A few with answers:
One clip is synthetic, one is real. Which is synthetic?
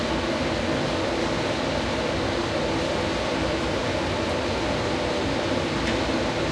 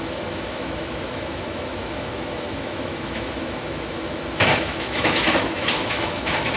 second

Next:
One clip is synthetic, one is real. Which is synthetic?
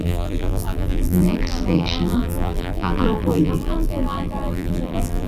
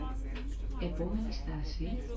first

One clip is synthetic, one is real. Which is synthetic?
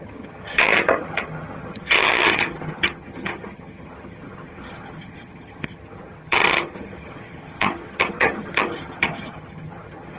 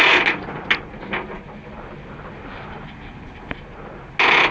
first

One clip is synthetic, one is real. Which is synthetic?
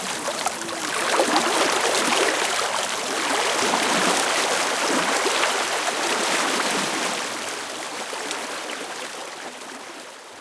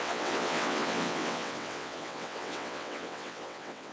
second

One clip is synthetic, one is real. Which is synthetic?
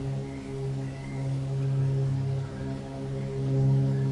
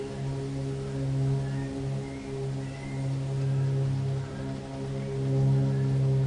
first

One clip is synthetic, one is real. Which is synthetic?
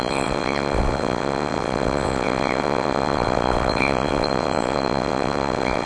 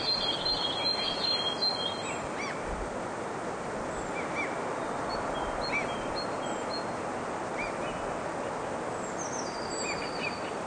first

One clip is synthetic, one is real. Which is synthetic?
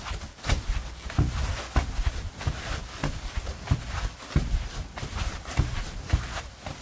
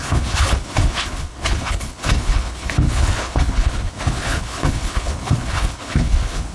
second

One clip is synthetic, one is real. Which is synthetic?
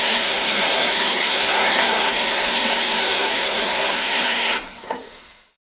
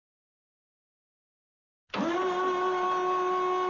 first